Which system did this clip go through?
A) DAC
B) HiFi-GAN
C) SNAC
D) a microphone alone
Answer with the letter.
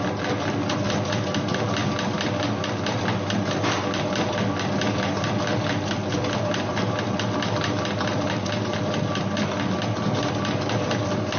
D